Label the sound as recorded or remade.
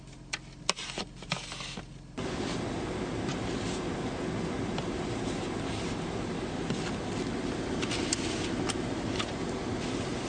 recorded